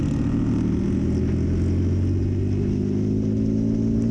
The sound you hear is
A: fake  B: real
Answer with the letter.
B